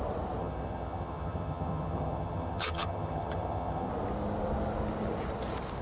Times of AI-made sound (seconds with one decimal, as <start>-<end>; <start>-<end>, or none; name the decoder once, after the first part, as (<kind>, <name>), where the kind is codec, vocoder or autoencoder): 0.4-3.9 (vocoder, HiFi-GAN)